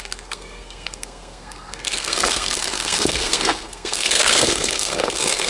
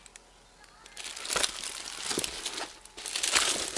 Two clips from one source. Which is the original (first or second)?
second